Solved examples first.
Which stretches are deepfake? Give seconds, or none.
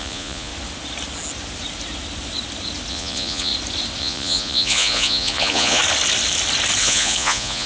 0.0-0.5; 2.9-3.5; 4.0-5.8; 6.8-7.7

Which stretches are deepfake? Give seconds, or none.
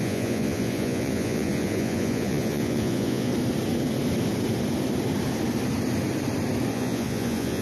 0.0-3.3; 6.7-7.6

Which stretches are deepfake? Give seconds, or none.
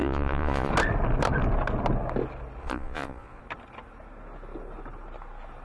0.0-0.7; 2.6-3.4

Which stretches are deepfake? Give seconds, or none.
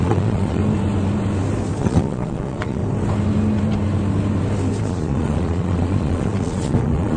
0.0-0.6; 1.8-2.8; 4.8-7.2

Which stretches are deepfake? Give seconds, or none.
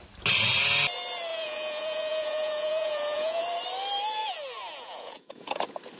1.3-3.4; 4.2-5.6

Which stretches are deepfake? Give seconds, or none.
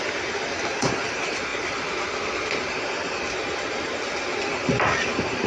none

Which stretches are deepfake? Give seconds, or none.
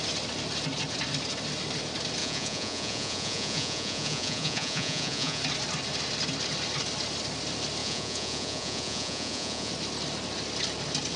2.2-5.4; 7.8-9.7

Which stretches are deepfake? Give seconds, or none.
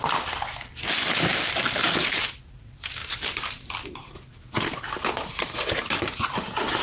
none